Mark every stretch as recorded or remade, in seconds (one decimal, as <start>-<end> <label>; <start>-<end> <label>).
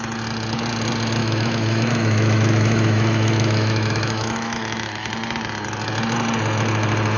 0.0-1.2 recorded; 1.2-5.1 remade; 5.1-7.2 recorded